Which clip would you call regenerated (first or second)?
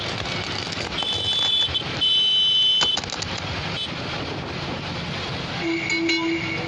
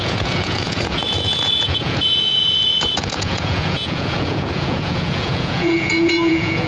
second